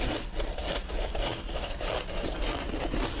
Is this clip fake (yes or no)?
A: no